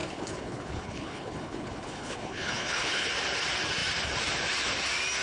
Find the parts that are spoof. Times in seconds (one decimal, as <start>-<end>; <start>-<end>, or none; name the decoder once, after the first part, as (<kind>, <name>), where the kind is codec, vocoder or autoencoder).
0.0-3.1 (codec, HILCodec)